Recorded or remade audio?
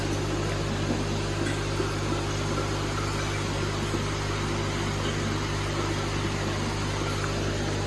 recorded